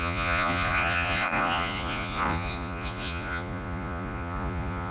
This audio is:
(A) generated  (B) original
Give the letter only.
A